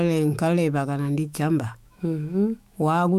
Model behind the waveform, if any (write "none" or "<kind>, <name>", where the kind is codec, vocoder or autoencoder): autoencoder, DAC-VAE